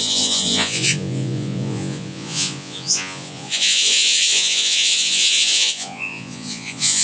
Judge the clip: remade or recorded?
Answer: remade